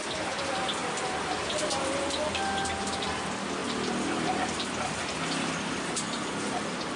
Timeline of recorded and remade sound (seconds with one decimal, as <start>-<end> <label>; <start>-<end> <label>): 0.0-3.6 recorded; 3.6-5.0 remade; 5.0-7.0 recorded